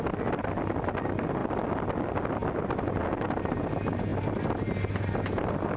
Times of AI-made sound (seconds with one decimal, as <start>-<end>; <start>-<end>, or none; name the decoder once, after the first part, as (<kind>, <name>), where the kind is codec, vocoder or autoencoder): none